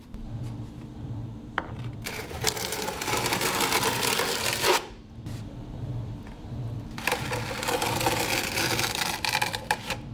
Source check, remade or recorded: remade